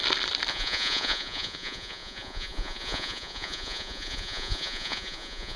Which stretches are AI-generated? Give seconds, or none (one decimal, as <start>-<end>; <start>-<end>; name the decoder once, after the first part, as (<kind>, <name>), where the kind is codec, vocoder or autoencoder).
0.5-5.6 (vocoder, Vocos)